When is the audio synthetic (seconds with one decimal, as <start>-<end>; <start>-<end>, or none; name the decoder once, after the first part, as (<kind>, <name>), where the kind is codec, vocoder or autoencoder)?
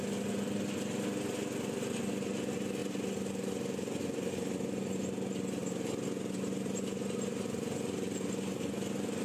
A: none